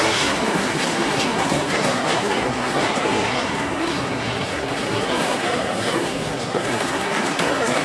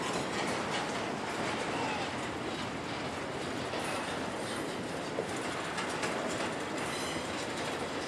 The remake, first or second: first